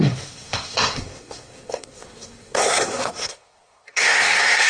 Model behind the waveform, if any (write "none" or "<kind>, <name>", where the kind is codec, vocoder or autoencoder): codec, SNAC